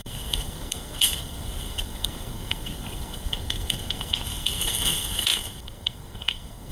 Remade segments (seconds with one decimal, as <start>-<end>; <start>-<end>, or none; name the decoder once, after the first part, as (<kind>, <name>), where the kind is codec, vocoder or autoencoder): 0.0-6.7 (codec, SNAC)